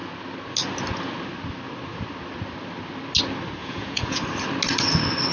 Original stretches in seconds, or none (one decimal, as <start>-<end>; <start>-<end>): 0.0-3.6; 4.2-5.3